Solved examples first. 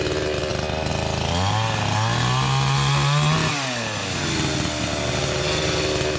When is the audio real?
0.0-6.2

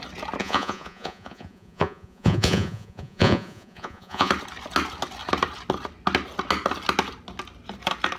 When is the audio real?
0.0-0.4; 4.3-8.2

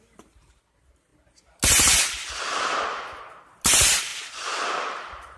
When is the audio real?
0.0-5.4

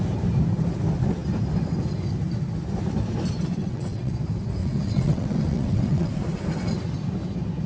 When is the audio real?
0.0-3.6; 4.1-4.6; 6.1-7.7

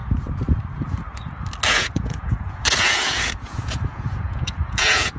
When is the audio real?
0.0-1.7

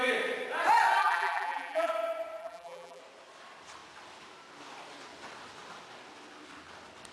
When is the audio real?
0.0-1.0; 1.9-2.4; 3.0-7.1